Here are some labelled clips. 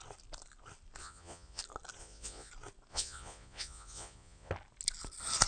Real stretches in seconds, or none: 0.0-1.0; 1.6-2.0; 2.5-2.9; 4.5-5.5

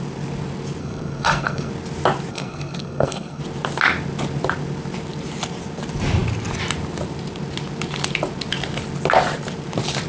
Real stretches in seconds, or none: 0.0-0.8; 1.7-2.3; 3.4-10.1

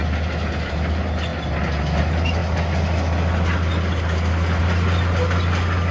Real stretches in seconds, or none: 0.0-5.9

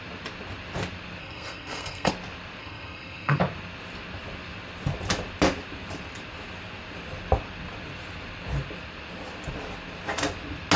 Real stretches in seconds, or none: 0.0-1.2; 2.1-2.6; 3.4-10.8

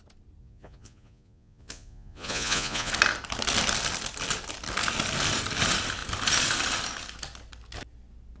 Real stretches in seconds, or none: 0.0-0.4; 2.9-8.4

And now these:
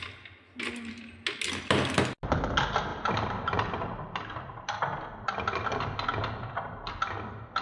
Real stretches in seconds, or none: 0.0-2.9; 4.8-7.6

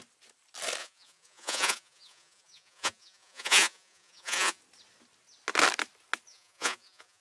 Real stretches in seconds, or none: 0.0-0.8; 4.6-6.3